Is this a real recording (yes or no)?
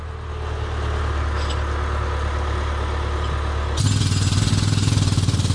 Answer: yes